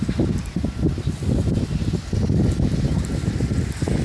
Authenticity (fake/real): real